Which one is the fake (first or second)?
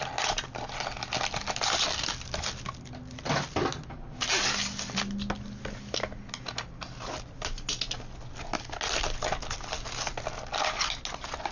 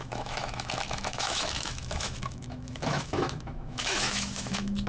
second